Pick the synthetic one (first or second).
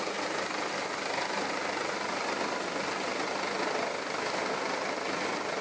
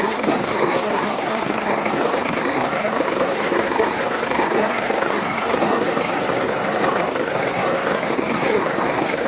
second